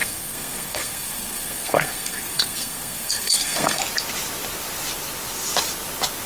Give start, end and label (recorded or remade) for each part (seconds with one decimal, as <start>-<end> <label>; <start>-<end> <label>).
0.0-3.8 remade; 3.8-6.3 recorded